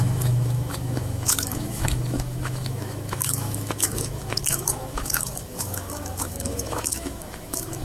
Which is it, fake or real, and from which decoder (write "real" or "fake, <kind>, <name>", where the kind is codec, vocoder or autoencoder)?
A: fake, autoencoder, DAC-VAE